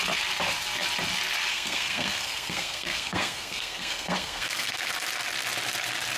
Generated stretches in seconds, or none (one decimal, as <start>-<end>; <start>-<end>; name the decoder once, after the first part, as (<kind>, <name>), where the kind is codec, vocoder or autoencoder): 1.5-4.9 (codec, SNAC)